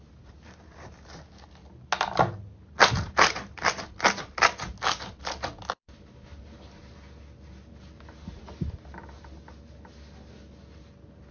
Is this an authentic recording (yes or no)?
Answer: yes